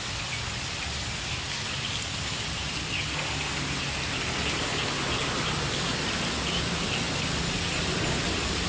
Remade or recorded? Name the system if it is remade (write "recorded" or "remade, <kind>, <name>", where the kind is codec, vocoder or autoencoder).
recorded